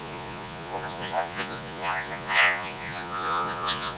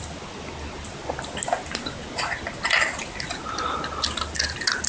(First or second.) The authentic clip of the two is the second